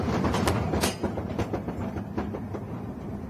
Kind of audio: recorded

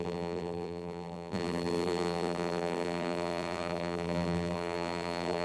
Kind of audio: remade